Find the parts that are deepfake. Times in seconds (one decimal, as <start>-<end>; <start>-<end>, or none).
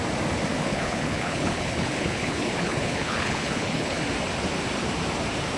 0.6-4.0